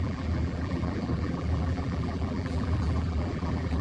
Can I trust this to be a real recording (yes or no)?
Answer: no